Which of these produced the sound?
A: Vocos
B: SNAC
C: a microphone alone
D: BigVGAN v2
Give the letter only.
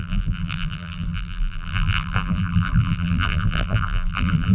D